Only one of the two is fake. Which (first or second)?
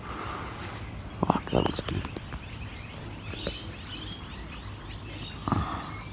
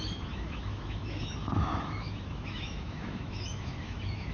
second